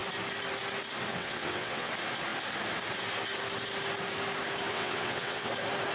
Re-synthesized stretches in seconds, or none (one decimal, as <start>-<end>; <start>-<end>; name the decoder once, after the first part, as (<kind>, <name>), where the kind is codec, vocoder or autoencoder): 1.1-1.9 (vocoder, WaveNeXt); 4.7-5.5